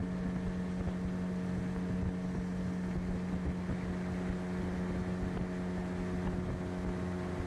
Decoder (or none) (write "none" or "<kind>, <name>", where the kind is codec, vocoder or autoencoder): none